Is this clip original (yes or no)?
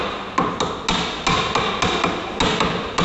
yes